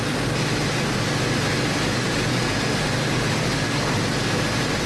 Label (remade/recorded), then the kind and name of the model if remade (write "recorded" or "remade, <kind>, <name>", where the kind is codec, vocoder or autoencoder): recorded